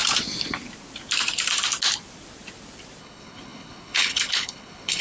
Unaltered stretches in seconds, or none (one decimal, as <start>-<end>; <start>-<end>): 0.0-3.0